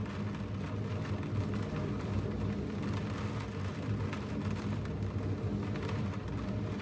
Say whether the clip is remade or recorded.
recorded